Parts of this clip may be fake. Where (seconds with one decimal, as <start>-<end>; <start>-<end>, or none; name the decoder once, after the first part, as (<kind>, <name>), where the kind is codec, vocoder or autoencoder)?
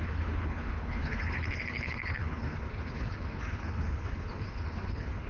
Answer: 0.0-5.3 (codec, HILCodec)